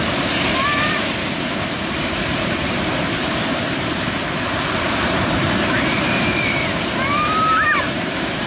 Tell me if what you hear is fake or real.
fake